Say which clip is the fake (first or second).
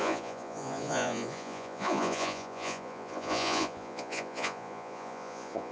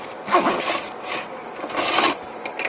first